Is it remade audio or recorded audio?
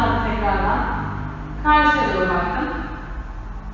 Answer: recorded